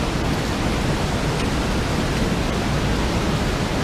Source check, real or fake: real